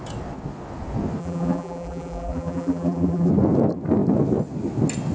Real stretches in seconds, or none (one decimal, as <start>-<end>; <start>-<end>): 0.0-1.2; 3.3-5.1